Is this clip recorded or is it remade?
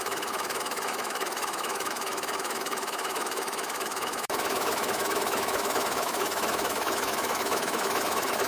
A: remade